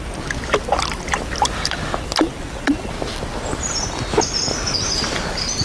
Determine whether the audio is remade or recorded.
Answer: recorded